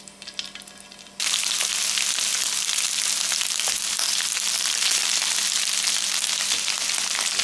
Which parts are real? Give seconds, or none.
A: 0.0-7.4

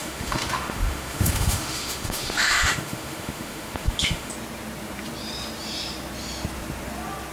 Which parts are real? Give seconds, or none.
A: 4.3-7.3

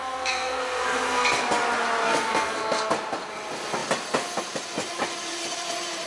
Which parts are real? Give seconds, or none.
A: 1.4-2.0; 2.9-6.1

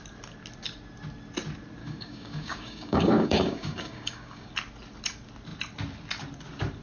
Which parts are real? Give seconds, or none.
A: 0.0-1.8; 4.5-6.8

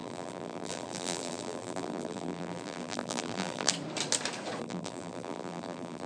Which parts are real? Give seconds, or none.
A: 3.7-4.6

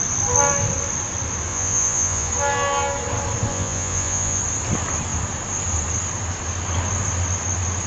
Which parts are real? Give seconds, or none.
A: 0.0-1.5; 2.3-3.5; 4.4-7.9

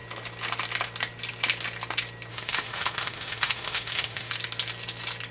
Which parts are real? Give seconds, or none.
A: 0.0-2.3; 4.3-5.3